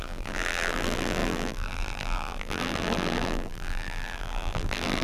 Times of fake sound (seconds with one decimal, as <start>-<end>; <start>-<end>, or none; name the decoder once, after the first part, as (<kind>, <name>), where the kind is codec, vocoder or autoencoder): 0.0-5.0 (vocoder, BigVGAN v2)